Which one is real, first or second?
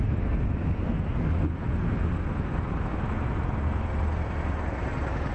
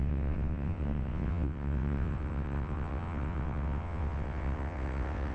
first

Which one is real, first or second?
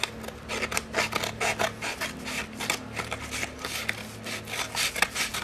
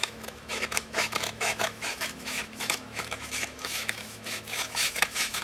first